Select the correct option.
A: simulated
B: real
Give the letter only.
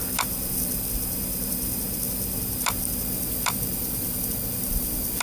B